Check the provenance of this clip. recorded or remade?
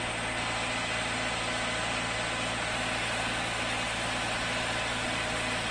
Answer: recorded